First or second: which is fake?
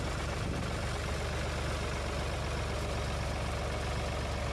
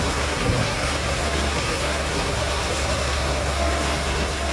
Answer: second